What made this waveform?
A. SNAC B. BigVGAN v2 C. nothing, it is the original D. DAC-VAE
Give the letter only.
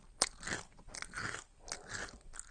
C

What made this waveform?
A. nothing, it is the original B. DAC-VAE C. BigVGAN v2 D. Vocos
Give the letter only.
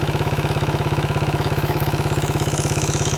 B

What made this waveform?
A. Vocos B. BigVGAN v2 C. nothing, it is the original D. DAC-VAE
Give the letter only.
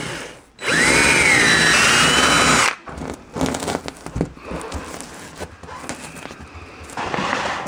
C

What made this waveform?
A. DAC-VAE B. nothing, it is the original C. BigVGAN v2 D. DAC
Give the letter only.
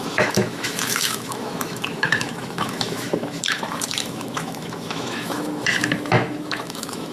A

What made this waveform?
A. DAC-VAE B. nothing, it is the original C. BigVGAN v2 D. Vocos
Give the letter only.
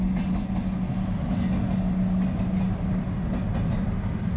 B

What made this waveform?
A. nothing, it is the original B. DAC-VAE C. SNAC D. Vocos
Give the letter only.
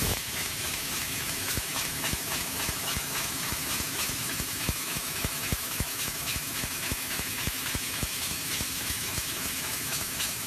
B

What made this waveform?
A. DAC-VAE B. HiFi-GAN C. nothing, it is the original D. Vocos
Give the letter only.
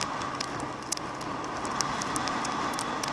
C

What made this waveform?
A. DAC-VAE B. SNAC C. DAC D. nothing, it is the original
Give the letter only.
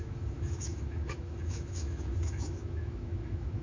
A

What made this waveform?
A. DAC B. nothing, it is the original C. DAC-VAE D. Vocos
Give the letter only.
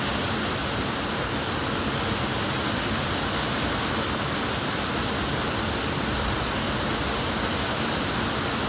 B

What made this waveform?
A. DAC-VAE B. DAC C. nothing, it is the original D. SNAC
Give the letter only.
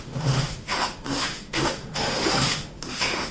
A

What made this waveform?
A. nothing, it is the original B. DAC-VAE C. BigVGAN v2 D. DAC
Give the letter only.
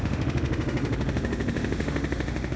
B